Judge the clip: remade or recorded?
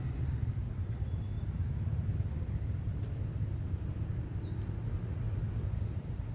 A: recorded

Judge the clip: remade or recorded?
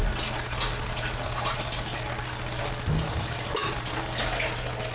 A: recorded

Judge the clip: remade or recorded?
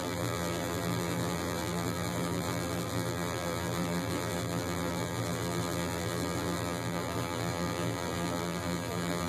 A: remade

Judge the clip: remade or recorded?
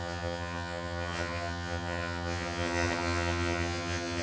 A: remade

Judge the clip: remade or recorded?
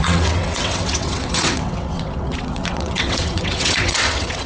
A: remade